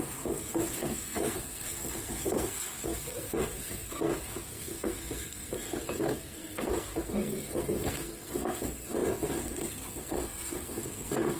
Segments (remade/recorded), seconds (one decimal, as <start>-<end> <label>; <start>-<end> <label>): 0.0-11.4 remade